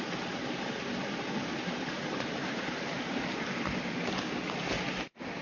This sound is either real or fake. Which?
real